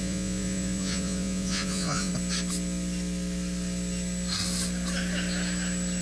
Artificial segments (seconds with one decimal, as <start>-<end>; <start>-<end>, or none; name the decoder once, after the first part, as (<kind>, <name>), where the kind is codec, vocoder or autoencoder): 0.0-2.1 (vocoder, Vocos)

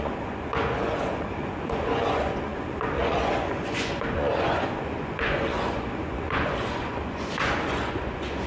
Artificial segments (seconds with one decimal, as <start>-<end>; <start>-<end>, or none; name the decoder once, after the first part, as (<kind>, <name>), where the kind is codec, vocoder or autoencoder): 0.0-8.5 (vocoder, Vocos)

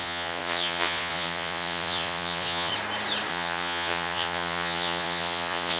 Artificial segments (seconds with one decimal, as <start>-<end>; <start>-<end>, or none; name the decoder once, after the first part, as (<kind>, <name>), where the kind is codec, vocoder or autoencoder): 0.0-2.7 (vocoder, Vocos); 3.3-5.8

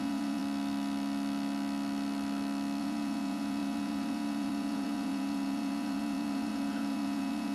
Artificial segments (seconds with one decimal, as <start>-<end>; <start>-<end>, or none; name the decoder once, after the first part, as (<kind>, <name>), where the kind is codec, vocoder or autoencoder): 0.0-0.4 (vocoder, Vocos); 2.8-7.5

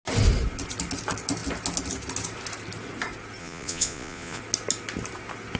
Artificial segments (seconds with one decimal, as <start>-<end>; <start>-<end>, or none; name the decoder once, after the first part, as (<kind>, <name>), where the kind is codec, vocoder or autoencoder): 3.4-4.4 (vocoder, Vocos)

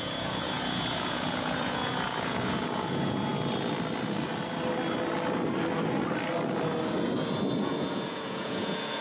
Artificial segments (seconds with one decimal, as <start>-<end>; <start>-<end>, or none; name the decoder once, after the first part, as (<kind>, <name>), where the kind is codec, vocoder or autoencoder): 0.0-3.3 (vocoder, Vocos); 7.6-9.0

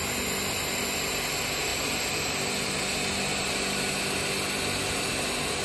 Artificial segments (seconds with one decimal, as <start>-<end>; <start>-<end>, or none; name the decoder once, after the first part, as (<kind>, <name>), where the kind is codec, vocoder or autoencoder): none